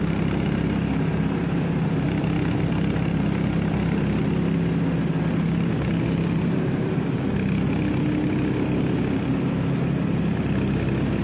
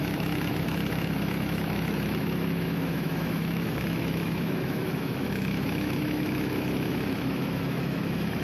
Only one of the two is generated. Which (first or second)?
second